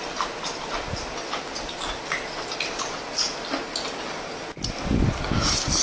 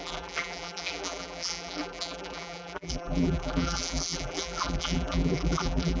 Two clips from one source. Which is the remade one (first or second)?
second